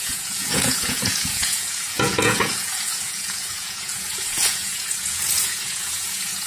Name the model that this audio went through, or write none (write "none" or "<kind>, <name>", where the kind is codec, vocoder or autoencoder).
vocoder, Vocos